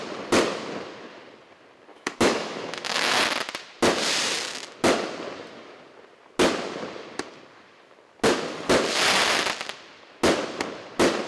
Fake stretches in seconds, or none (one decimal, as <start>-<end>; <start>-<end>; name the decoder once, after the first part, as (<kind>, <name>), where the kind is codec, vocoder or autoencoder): 1.9-3.2 (autoencoder, DAC-VAE)

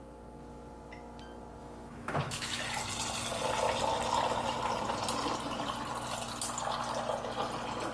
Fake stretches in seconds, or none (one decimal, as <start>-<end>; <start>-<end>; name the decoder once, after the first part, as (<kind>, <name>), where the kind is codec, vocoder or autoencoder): 1.6-2.6 (autoencoder, DAC-VAE)

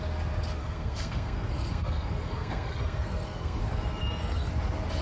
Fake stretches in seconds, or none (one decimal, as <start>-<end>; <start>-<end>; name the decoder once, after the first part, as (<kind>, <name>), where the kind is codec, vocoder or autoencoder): 0.6-3.6 (codec, SNAC); 4.0-4.5

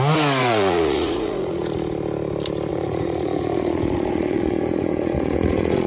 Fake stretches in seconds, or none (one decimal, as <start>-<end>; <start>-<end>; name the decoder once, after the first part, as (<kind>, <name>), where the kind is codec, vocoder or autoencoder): 0.4-1.6 (vocoder, Vocos); 2.7-5.9

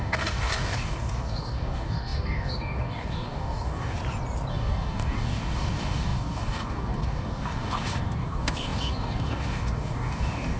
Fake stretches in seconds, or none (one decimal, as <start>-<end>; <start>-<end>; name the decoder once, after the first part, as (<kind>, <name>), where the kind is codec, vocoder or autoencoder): 0.0-4.0 (codec, DAC); 4.5-10.6

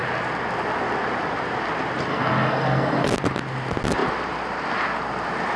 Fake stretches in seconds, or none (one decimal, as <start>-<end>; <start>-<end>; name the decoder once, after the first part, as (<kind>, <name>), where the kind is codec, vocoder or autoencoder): 2.1-3.1 (codec, SNAC)

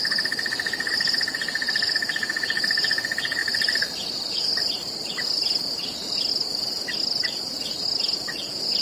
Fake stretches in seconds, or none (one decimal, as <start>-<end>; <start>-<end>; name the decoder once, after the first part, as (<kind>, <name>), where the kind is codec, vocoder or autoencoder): none

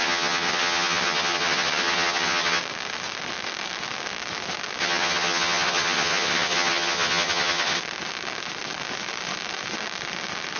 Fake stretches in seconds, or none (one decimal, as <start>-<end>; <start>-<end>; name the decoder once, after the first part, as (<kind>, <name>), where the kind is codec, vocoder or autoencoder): 0.0-2.6 (vocoder, HiFi-GAN); 4.8-7.8